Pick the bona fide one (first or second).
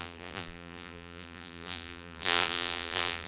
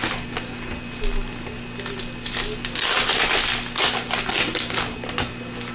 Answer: second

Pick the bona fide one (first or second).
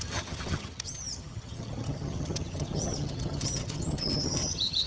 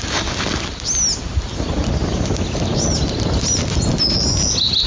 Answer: second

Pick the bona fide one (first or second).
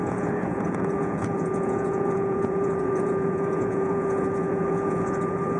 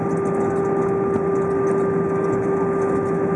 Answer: second